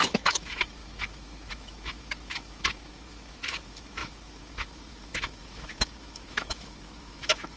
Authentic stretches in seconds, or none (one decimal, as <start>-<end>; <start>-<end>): none